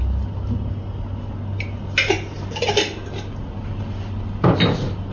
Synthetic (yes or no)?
no